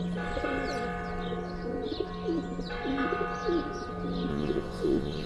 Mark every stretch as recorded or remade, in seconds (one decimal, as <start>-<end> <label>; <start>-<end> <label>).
0.0-4.3 recorded; 4.3-5.3 remade